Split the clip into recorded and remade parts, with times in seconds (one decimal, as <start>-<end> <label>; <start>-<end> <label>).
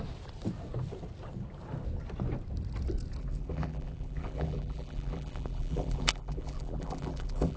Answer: 0.0-3.2 recorded; 3.2-7.6 remade